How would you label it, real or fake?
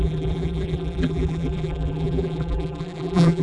fake